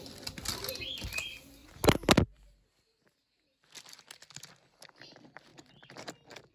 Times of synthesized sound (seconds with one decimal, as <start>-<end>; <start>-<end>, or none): 5.5-6.1